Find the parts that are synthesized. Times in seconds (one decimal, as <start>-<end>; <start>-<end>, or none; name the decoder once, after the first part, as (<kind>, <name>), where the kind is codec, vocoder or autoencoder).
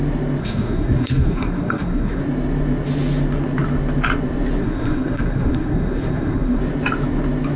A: 0.4-2.2 (codec, SNAC); 4.6-6.6